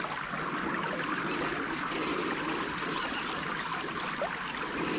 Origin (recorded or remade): recorded